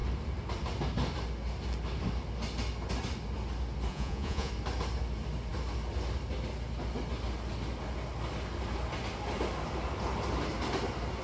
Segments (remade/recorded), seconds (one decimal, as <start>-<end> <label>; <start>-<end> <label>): 0.0-3.9 recorded; 3.9-4.5 remade; 4.5-11.2 recorded